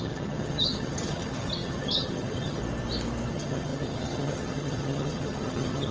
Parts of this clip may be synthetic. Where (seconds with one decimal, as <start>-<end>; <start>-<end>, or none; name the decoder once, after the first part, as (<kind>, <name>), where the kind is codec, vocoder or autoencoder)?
0.0-2.6 (vocoder, HiFi-GAN); 3.3-5.9